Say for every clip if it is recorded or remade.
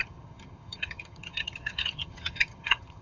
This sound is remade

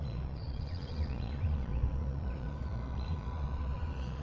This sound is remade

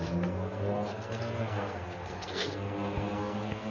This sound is remade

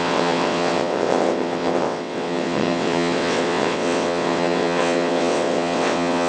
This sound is remade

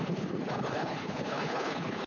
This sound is remade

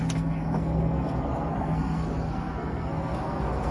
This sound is remade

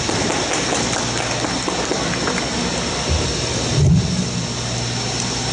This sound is recorded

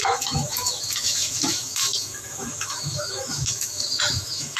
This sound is remade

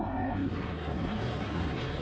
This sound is remade